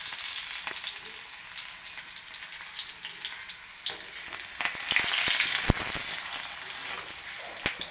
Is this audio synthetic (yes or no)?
no